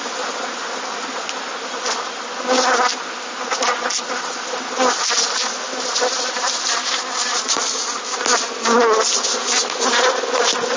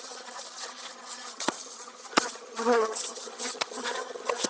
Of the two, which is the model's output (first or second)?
second